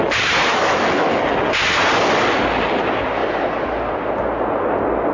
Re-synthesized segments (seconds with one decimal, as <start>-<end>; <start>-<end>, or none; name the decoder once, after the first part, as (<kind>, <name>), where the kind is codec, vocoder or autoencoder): 0.5-1.2 (autoencoder, DAC-VAE)